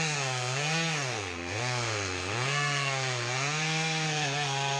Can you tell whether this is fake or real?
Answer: fake